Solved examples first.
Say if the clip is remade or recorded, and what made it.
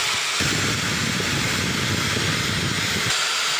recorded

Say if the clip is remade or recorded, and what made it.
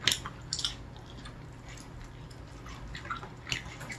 recorded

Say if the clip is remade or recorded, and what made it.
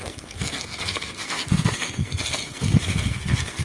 remade, codec, SNAC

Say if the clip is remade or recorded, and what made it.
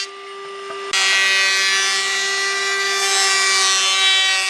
recorded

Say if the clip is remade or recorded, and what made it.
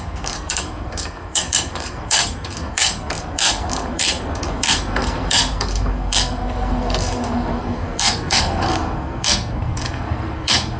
remade, codec, SNAC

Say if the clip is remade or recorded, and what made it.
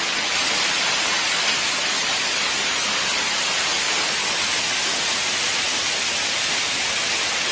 recorded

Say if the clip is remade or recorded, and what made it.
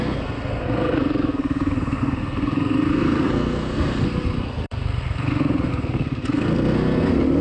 remade, codec, SNAC